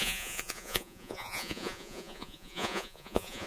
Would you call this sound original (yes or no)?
no